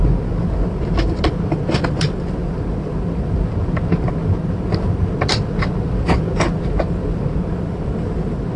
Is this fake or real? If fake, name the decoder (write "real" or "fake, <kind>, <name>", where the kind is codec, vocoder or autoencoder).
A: real